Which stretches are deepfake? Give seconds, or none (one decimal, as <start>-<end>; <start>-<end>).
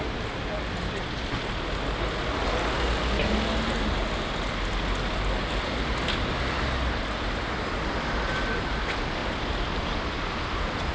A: none